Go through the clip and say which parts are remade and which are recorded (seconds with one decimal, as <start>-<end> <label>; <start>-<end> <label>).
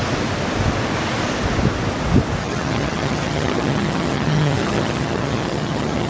0.0-2.4 recorded; 2.4-6.1 remade